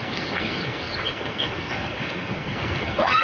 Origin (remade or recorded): remade